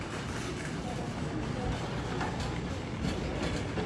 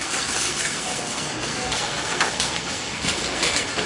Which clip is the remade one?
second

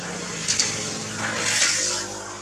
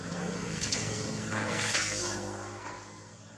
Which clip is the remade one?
second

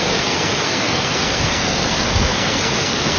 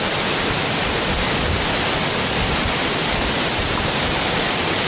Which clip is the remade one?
first